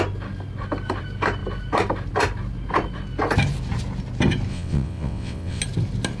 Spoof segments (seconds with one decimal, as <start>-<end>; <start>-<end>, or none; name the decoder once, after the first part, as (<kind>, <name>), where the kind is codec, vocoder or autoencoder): 4.5-5.6 (vocoder, WaveNeXt)